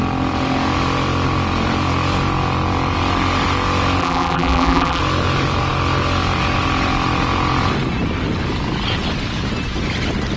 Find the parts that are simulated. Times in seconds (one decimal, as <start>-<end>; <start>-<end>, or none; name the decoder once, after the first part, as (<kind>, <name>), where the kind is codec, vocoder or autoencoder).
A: 4.0-5.0 (vocoder, BigVGAN v2)